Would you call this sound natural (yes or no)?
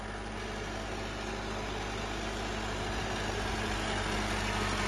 yes